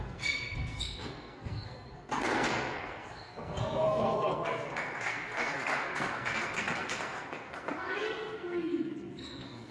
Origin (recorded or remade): remade